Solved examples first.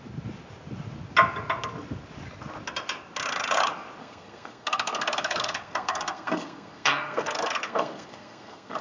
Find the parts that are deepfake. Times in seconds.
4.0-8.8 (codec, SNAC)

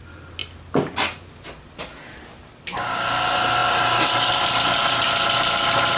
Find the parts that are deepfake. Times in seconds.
none

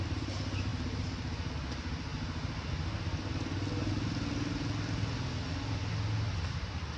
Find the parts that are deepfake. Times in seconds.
none

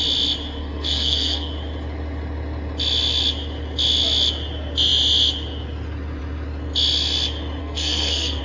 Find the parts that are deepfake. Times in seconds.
0.6-1.5 (codec, SNAC); 7.6-8.4